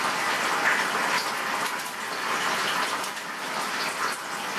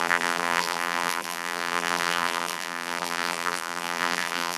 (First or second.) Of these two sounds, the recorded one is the first